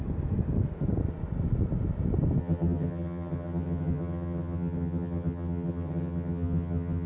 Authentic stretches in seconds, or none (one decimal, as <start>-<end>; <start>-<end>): 0.0-2.4